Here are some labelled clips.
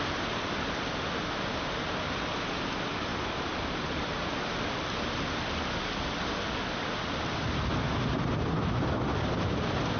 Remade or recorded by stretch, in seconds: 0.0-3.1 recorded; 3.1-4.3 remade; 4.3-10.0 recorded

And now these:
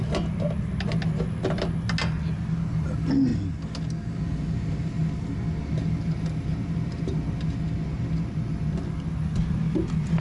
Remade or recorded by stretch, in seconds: 0.0-10.2 recorded

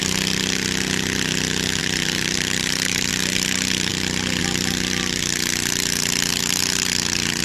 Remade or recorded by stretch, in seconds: 0.0-1.8 recorded; 1.8-3.1 remade; 3.1-7.4 recorded